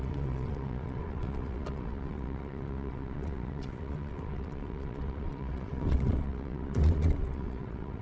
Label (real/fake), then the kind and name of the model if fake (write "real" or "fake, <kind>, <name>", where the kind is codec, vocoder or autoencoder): fake, vocoder, WaveNeXt